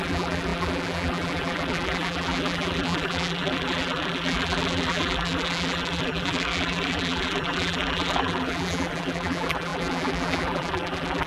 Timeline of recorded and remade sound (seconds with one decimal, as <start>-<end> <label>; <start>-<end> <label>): 0.0-11.3 remade